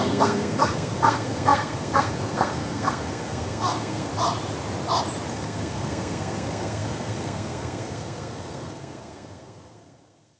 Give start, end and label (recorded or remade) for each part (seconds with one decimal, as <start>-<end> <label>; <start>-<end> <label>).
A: 0.0-4.1 remade; 4.1-5.3 recorded; 5.3-10.4 remade